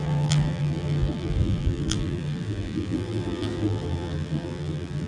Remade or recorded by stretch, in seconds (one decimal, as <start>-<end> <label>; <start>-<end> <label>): 0.0-5.1 remade